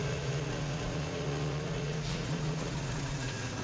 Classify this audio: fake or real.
fake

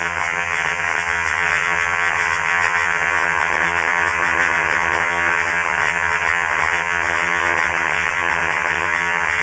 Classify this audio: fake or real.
fake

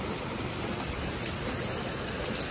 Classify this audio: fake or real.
real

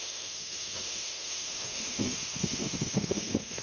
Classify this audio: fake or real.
fake